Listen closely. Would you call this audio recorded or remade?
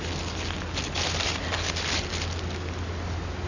recorded